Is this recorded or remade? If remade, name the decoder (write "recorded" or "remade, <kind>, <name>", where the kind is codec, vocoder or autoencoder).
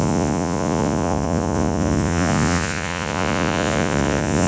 remade, vocoder, Vocos